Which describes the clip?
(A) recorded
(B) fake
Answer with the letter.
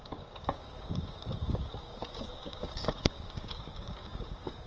B